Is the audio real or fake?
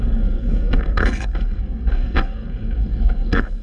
fake